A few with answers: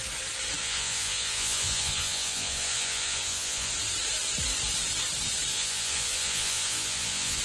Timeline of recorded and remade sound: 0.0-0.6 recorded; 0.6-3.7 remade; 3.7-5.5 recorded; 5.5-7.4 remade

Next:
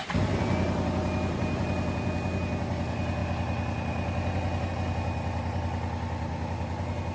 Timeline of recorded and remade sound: 0.0-7.1 recorded